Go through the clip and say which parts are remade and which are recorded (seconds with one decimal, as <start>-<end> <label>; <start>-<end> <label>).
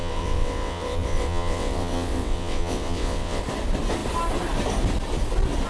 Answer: 0.0-3.4 remade; 3.4-5.7 recorded